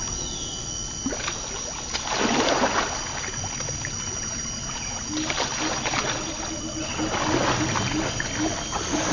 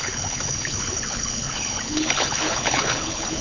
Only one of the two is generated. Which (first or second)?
second